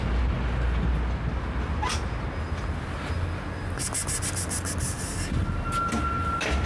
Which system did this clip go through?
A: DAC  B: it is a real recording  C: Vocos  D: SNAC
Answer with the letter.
B